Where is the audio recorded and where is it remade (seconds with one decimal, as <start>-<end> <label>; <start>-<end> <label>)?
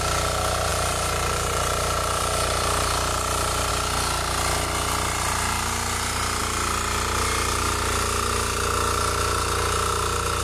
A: 0.0-0.7 recorded; 0.7-3.7 remade; 3.7-10.4 recorded